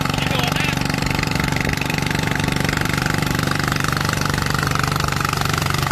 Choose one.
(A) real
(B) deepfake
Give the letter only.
B